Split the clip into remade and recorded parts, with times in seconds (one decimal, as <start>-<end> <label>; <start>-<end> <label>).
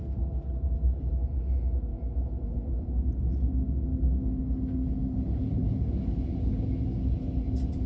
0.0-1.9 recorded; 1.9-3.3 remade; 3.3-7.9 recorded